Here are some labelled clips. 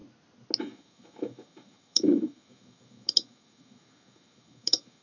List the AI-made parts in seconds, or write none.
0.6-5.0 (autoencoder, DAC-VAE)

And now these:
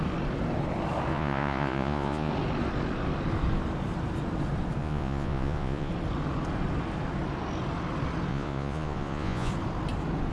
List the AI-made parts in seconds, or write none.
1.1-2.3 (vocoder, Vocos); 4.8-5.9; 8.3-9.5

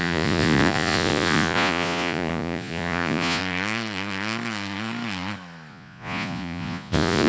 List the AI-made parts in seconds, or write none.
0.0-3.4 (vocoder, Vocos); 5.7-7.3

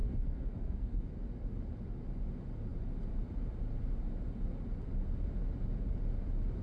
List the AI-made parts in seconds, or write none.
0.0-1.0 (codec, SNAC)